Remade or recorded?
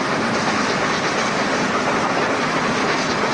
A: recorded